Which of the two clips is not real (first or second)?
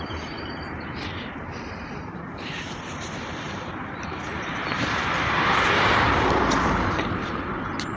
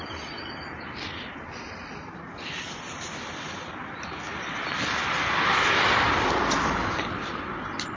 first